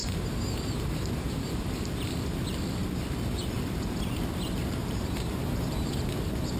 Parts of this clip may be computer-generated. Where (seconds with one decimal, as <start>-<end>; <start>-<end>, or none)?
0.0-1.9; 4.8-5.9